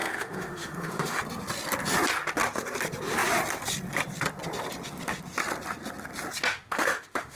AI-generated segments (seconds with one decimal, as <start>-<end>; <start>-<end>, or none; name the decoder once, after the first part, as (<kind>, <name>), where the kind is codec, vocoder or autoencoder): 0.0-1.2 (autoencoder, DAC-VAE); 6.5-7.4